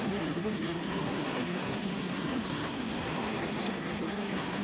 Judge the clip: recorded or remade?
remade